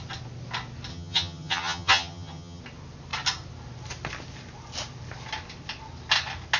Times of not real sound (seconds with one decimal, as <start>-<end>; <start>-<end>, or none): 0.9-2.6